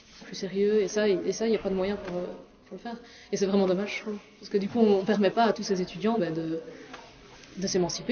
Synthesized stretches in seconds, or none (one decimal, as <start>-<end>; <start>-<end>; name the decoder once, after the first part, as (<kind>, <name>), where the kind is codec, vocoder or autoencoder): none